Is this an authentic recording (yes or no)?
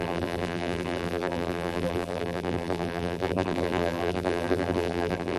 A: no